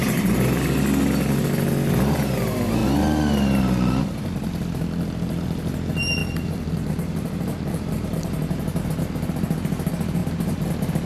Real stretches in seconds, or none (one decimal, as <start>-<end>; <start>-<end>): 0.0-6.2; 8.9-10.2; 10.7-11.1